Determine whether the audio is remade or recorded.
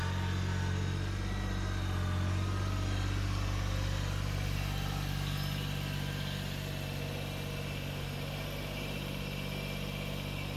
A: recorded